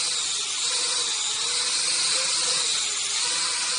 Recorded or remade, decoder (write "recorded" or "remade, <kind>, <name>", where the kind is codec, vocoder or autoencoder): recorded